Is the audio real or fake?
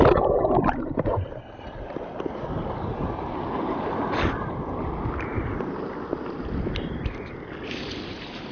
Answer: real